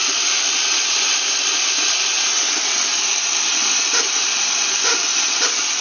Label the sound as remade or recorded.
recorded